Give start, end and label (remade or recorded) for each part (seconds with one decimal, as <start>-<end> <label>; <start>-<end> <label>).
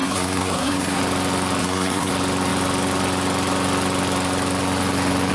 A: 0.0-1.0 remade; 1.0-1.6 recorded; 1.6-2.1 remade; 2.1-5.3 recorded